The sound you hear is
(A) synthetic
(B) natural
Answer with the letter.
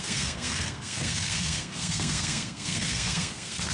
A